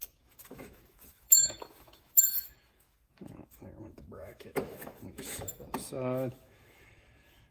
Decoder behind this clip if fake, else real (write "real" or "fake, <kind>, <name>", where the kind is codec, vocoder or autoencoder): fake, autoencoder, DAC-VAE